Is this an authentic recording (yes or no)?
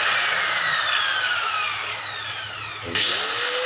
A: yes